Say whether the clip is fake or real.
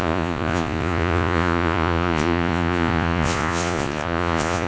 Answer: fake